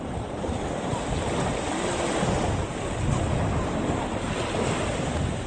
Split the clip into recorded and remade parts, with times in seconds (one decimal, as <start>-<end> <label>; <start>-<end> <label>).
0.0-5.5 recorded